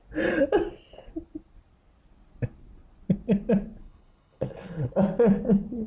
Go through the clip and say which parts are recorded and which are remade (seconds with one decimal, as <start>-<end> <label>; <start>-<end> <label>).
0.0-3.8 recorded; 3.8-4.9 remade; 4.9-5.9 recorded